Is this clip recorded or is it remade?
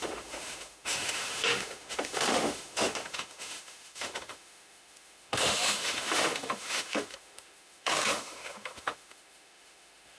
remade